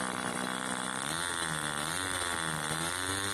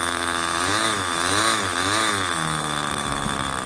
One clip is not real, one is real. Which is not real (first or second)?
second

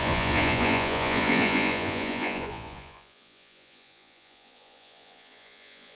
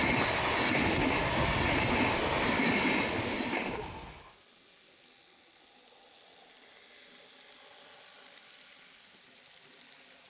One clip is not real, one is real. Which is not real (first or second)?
first